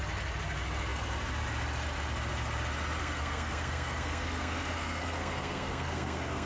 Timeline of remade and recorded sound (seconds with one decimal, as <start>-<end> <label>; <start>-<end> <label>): 0.0-3.0 recorded; 3.0-6.5 remade